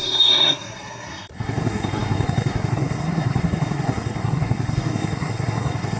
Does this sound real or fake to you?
fake